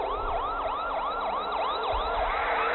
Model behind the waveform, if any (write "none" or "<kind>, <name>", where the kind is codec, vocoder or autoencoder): vocoder, BigVGAN v2